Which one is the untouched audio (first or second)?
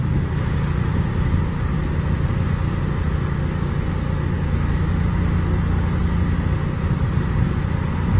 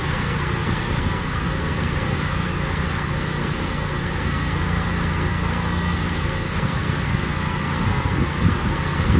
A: first